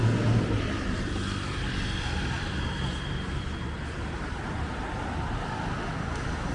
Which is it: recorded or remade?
recorded